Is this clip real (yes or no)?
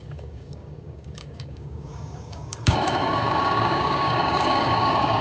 no